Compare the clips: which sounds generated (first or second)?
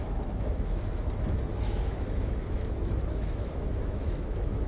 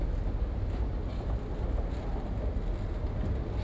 first